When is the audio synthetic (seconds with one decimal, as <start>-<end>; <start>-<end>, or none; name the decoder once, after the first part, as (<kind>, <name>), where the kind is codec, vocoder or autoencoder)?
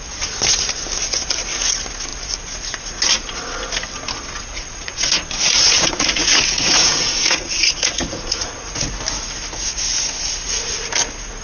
4.5-8.9 (vocoder, Vocos)